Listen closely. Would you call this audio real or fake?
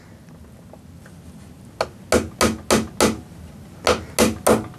real